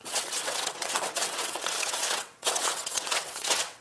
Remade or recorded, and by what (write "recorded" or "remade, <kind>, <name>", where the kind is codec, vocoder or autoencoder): remade, vocoder, WaveNeXt